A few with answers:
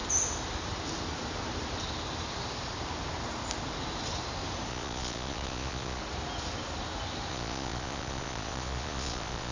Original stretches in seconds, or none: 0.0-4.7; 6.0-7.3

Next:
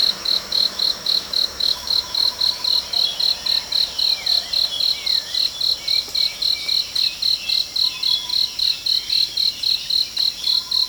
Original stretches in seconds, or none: 2.4-10.9

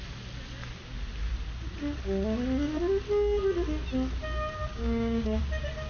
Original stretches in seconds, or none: 0.0-4.7; 5.4-5.9

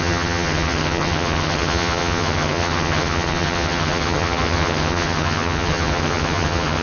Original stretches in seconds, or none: none